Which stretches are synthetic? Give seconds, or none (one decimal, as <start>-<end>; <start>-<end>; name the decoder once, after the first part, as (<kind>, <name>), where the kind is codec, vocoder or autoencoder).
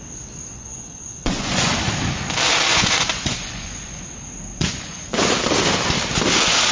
0.5-1.7 (vocoder, Vocos); 2.7-4.0; 4.5-5.2